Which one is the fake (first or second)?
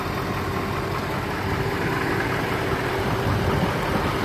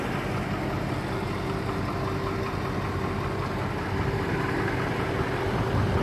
first